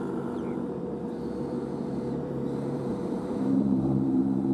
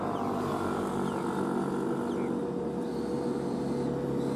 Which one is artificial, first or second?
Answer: first